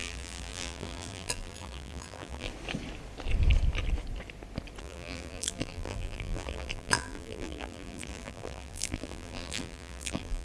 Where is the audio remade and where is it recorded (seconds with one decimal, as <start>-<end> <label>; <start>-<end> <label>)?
0.0-2.5 remade; 2.5-4.8 recorded; 4.8-10.4 remade